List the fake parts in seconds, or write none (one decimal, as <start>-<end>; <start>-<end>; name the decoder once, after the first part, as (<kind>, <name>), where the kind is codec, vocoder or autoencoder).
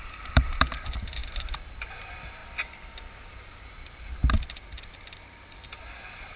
0.0-2.4 (vocoder, BigVGAN v2); 3.6-4.2; 5.8-6.4